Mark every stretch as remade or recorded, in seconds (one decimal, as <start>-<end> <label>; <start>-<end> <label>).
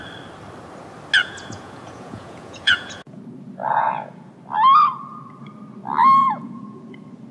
0.0-1.2 recorded; 1.2-3.2 remade; 3.2-3.6 recorded; 3.6-4.3 remade; 4.3-6.2 recorded; 6.2-6.8 remade; 6.8-7.3 recorded